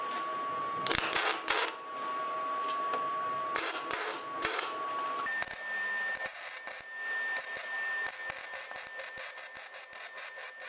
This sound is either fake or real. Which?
real